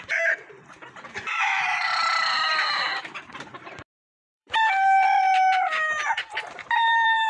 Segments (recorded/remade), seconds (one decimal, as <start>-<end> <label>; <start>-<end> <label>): 0.0-2.0 remade; 2.0-3.6 recorded; 3.6-7.3 remade